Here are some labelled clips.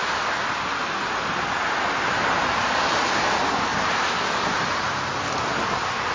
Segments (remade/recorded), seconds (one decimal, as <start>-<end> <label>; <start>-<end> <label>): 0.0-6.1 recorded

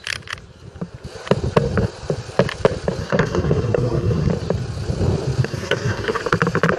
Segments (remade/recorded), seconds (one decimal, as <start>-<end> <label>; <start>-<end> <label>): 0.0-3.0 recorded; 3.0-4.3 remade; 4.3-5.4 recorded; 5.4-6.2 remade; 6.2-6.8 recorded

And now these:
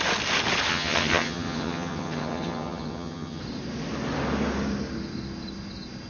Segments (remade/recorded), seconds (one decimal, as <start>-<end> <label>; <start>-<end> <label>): 0.0-0.7 recorded; 0.7-3.4 remade; 3.4-6.1 recorded